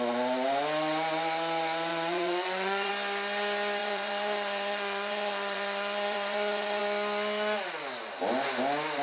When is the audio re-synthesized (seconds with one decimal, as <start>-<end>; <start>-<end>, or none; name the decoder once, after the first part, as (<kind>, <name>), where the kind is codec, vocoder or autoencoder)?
1.9-2.9 (vocoder, Vocos); 3.8-6.8